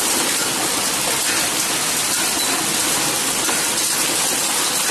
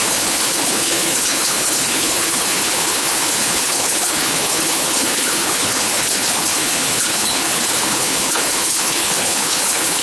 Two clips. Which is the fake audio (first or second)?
second